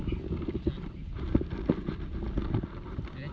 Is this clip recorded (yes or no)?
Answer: yes